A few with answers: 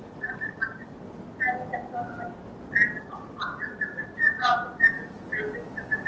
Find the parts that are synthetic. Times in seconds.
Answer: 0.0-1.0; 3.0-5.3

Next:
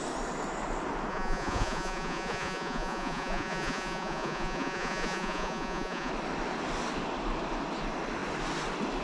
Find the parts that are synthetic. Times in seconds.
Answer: 1.1-6.1

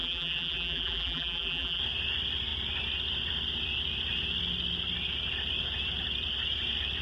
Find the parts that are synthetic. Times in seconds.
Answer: 0.0-1.8

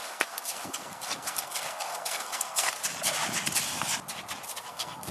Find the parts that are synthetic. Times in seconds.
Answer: 0.0-2.8; 4.6-5.1